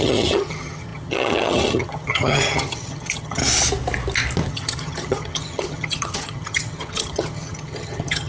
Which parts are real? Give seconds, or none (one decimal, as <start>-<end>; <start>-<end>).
3.4-4.5